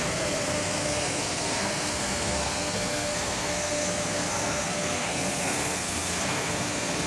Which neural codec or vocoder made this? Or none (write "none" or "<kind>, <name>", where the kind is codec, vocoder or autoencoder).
codec, SNAC